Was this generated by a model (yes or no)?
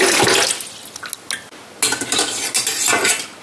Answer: no